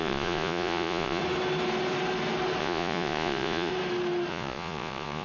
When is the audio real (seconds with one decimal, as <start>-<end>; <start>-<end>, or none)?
1.2-2.6; 3.7-4.3